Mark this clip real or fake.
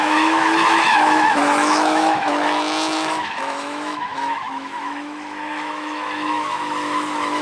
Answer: fake